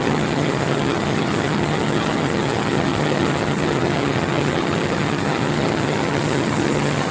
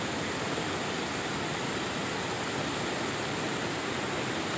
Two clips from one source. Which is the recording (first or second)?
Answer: second